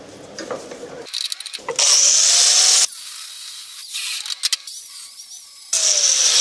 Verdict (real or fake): real